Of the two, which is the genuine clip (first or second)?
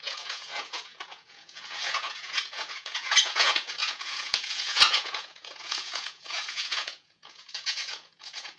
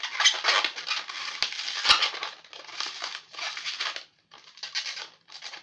second